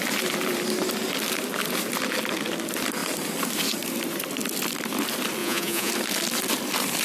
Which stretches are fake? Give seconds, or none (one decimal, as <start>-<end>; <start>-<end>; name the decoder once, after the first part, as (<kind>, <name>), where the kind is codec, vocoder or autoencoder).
5.4-5.9 (vocoder, Vocos)